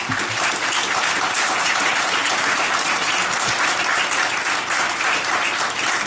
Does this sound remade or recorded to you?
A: recorded